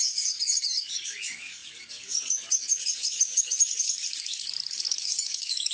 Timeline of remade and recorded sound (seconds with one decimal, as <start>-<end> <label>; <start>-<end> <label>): 0.0-5.7 remade